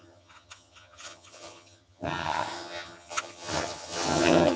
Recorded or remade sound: remade